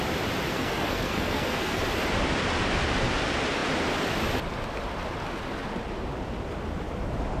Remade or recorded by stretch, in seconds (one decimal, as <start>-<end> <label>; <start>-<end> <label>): 0.0-0.5 recorded; 0.5-1.8 remade; 1.8-7.4 recorded